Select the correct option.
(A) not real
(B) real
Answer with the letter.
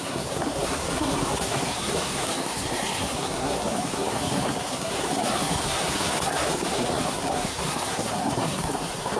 A